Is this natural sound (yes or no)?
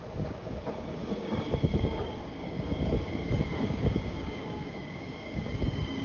no